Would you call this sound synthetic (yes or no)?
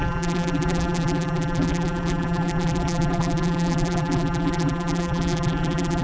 yes